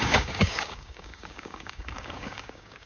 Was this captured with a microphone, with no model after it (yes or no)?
no